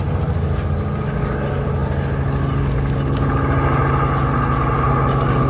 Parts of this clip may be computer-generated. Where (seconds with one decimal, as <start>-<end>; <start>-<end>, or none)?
none